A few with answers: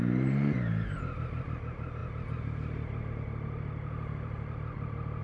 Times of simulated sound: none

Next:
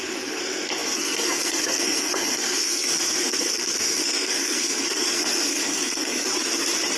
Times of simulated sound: 0.0-6.3 (codec, SNAC)

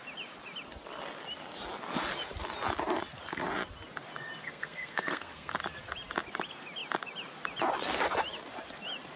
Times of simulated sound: 4.4-5.5 (codec, SNAC)

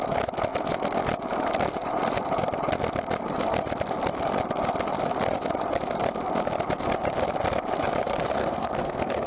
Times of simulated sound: 8.1-9.3 (codec, SNAC)

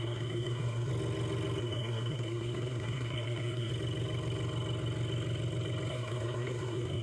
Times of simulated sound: 0.0-0.9 (codec, SNAC); 1.6-3.7; 5.9-7.0